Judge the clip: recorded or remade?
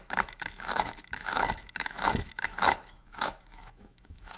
remade